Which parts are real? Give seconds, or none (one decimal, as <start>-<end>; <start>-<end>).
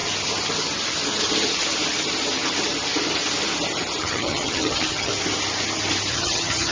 0.0-4.0; 5.1-6.1